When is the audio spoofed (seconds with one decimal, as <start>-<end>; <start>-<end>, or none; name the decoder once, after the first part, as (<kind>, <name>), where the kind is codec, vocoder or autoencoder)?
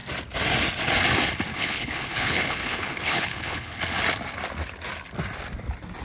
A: 1.5-3.8 (codec, HILCodec)